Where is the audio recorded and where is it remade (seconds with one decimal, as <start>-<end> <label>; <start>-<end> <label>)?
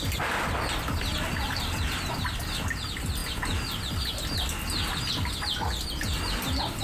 0.0-6.8 recorded